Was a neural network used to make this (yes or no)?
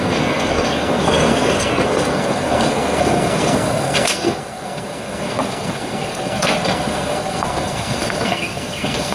yes